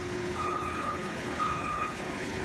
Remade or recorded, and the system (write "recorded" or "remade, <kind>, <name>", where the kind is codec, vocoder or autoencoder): remade, codec, HILCodec